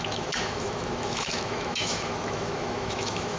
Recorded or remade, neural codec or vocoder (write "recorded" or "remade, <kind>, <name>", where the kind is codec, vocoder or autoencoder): remade, autoencoder, DAC-VAE